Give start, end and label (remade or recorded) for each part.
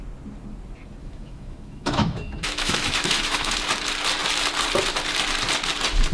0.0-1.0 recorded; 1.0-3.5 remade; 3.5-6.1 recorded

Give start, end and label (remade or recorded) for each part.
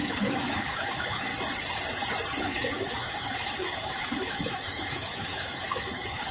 0.0-1.3 remade; 1.3-2.4 recorded; 2.4-6.3 remade